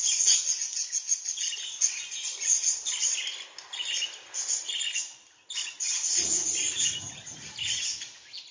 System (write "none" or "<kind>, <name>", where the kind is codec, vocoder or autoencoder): none